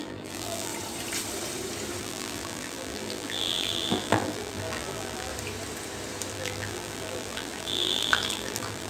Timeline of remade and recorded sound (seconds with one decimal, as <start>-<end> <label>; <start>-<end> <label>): 0.0-0.7 remade; 0.7-2.0 recorded; 2.0-5.3 remade; 5.3-6.3 recorded; 6.3-8.9 remade